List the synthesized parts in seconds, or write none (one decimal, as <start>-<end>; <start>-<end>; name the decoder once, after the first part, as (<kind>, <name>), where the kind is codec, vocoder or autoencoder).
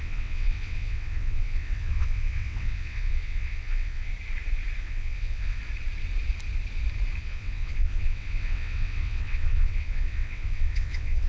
0.0-4.1 (vocoder, WaveNeXt); 4.8-5.6; 7.2-11.3